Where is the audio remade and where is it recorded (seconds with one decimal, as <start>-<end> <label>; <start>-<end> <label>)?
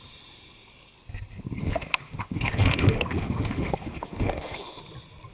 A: 0.0-1.6 recorded; 1.6-4.8 remade; 4.8-5.3 recorded